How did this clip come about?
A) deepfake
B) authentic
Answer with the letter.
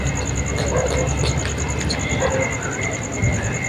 B